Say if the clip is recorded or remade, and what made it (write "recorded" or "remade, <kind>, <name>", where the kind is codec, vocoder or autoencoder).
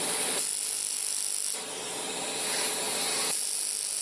recorded